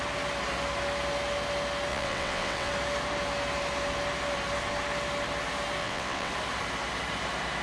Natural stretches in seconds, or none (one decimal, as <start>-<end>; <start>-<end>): 0.0-1.9; 2.7-5.8; 6.3-7.6